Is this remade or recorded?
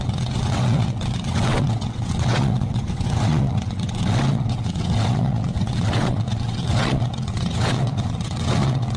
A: remade